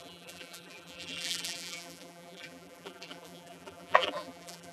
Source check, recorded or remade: remade